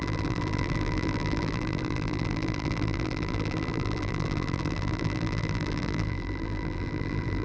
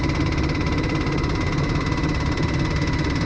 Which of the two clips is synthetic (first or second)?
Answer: first